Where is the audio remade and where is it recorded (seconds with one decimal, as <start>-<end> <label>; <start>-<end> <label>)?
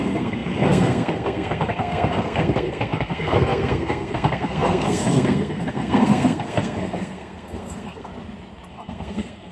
0.0-8.1 remade; 8.1-8.7 recorded; 8.7-9.5 remade